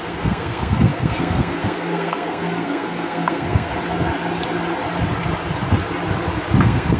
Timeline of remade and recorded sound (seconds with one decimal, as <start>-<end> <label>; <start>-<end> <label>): 0.0-3.7 remade; 3.7-6.6 recorded; 6.6-7.0 remade